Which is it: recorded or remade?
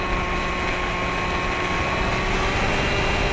recorded